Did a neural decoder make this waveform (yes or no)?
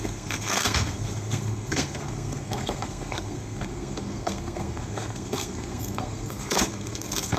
yes